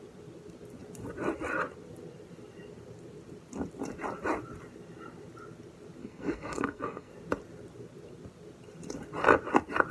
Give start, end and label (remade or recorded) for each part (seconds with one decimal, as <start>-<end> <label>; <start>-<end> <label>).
0.0-6.0 recorded; 6.0-7.1 remade; 7.1-9.9 recorded